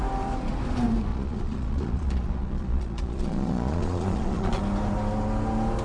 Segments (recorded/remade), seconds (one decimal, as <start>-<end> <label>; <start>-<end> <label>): 0.0-1.1 recorded; 1.1-4.6 remade; 4.6-5.8 recorded